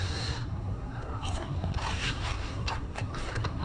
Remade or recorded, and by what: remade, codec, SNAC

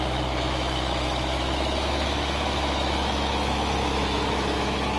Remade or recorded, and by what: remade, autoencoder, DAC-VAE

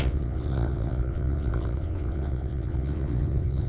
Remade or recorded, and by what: remade, vocoder, WaveNeXt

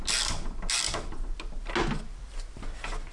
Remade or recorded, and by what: recorded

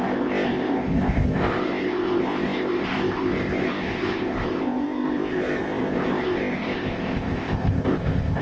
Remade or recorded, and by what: remade, codec, ZipCodec